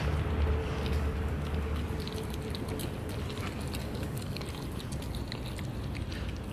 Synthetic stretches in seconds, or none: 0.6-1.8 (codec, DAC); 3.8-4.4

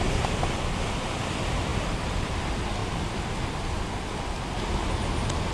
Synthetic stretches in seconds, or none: none

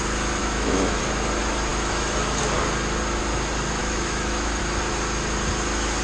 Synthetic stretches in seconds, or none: 0.4-1.0 (autoencoder, DAC-VAE); 1.7-2.4; 3.8-4.6

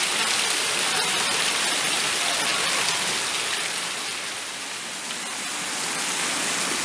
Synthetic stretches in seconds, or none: none